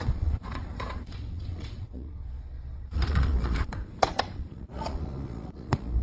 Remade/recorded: remade